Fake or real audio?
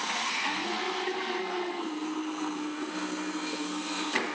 fake